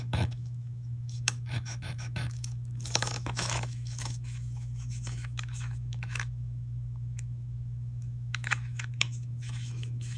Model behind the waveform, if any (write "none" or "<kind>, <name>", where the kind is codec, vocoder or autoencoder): autoencoder, DAC-VAE